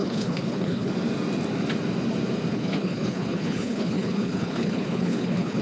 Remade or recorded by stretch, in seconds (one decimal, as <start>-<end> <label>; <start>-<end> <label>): 0.0-0.9 remade; 0.9-2.5 recorded; 2.5-5.6 remade

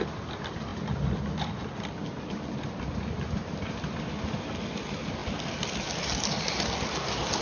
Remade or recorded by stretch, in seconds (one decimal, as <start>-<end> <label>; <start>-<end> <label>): 0.0-7.4 recorded

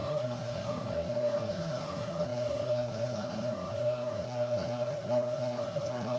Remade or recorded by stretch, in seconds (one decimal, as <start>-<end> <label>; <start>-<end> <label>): 0.0-6.2 remade